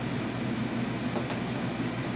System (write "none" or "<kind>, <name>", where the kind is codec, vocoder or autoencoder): none